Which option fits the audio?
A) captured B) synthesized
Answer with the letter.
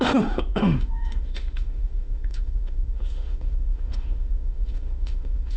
B